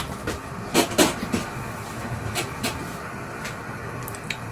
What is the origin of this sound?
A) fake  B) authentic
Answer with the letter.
B